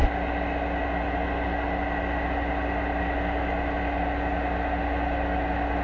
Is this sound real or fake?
real